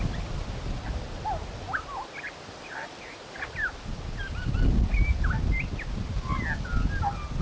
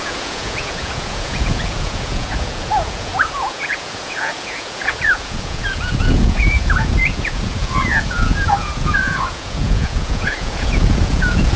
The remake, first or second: second